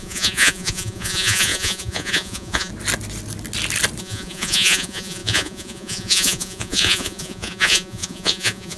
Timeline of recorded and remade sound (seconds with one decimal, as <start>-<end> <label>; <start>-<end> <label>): 0.0-2.7 remade; 2.7-4.0 recorded; 4.0-8.8 remade